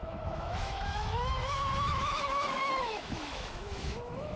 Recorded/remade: remade